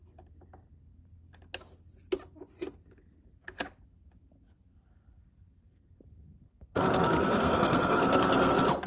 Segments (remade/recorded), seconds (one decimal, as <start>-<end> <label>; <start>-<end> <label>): 0.0-4.9 recorded; 4.9-8.5 remade; 8.5-8.9 recorded